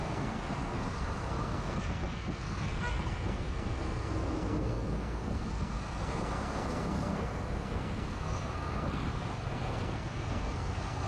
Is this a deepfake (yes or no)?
yes